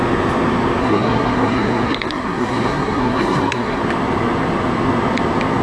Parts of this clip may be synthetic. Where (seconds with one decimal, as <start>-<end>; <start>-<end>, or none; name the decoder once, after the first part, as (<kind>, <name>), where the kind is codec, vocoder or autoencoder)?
0.8-3.8 (codec, SNAC)